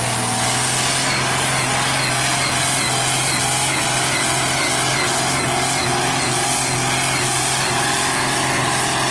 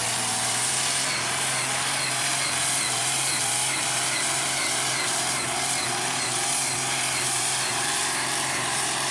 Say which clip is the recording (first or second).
first